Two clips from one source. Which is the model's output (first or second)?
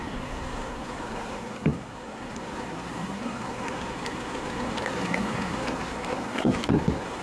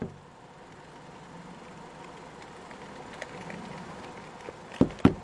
first